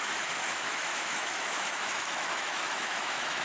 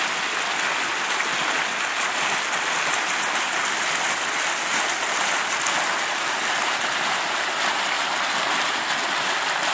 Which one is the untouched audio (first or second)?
second